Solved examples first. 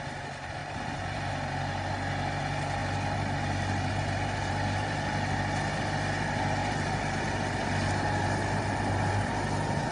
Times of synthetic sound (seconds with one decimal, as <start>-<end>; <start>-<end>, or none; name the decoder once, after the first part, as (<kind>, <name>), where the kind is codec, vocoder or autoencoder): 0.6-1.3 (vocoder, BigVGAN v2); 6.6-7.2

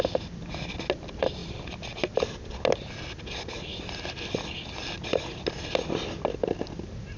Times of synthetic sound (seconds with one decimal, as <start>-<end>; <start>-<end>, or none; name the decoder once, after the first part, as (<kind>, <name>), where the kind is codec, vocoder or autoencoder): none

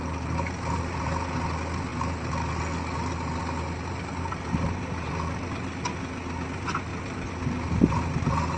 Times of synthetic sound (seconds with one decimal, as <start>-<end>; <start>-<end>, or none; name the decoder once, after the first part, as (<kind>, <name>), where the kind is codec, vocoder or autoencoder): none

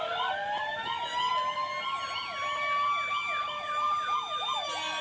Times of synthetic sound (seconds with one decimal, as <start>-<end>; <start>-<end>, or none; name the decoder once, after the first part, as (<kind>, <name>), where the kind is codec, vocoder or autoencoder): none

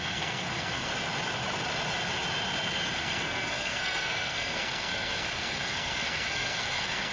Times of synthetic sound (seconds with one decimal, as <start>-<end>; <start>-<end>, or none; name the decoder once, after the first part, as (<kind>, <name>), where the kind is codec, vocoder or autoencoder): 0.0-0.9 (codec, SNAC); 3.0-7.1